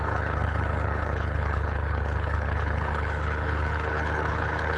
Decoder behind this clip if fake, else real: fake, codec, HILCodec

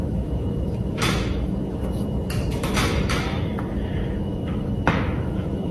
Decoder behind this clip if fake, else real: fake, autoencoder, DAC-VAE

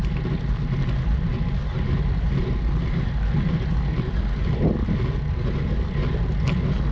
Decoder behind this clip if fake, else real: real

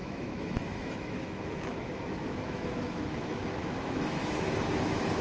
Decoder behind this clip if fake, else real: fake, autoencoder, DAC-VAE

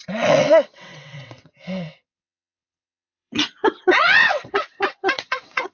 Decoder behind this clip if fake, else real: fake, vocoder, WaveNeXt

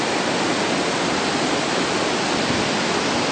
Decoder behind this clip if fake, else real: real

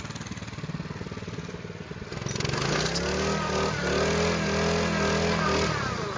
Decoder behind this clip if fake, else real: real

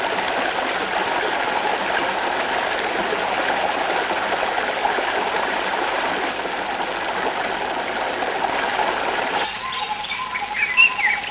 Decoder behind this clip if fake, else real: real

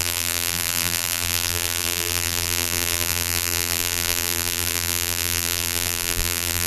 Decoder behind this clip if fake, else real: fake, vocoder, BigVGAN v2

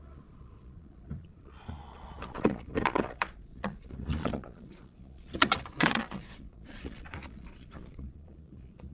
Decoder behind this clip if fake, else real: fake, vocoder, Vocos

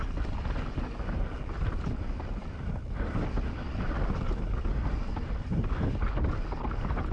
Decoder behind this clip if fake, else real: real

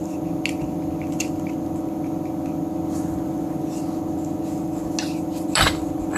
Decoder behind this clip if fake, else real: real